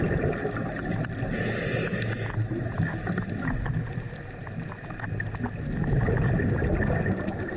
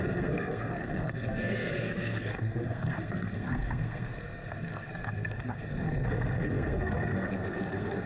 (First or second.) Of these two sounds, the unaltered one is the first